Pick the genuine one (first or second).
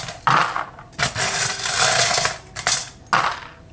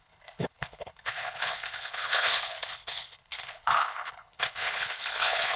first